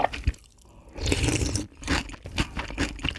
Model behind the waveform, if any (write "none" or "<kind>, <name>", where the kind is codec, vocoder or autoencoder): vocoder, BigVGAN v2